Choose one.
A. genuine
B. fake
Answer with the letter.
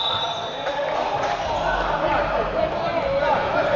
A